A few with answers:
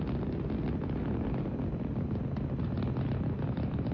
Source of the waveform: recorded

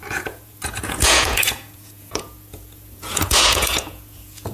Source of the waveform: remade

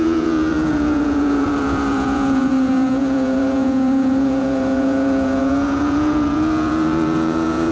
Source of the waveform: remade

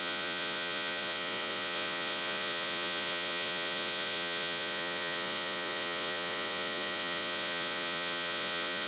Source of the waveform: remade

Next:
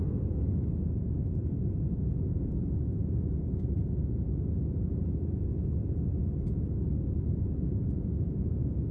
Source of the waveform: remade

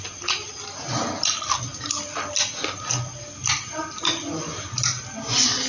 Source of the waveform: recorded